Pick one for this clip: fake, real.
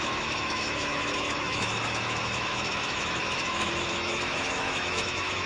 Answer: fake